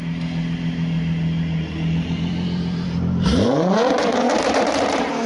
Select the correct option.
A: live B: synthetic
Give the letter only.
A